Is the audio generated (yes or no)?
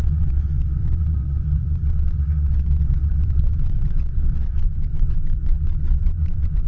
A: yes